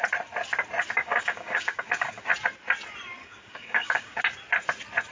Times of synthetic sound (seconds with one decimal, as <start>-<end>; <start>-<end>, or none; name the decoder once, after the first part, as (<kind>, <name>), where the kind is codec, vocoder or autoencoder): 1.0-2.3 (codec, DAC); 3.2-4.2